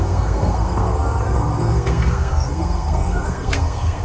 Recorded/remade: remade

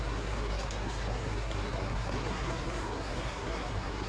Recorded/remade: remade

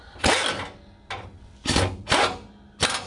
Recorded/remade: recorded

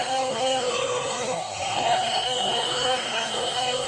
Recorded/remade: remade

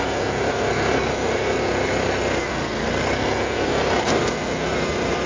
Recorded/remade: recorded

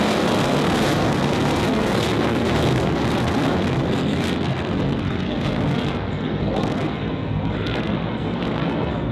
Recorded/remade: remade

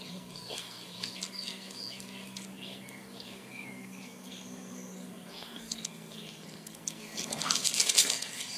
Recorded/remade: remade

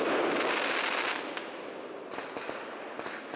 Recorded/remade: recorded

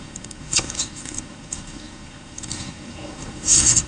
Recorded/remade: remade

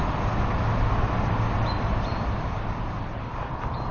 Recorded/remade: recorded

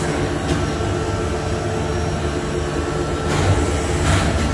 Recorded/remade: recorded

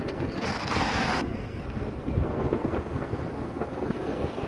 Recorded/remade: remade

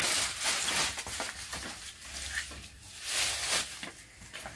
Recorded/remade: recorded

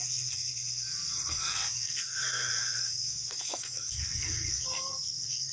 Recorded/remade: remade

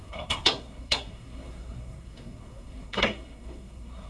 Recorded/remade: remade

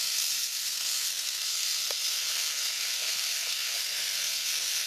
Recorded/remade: remade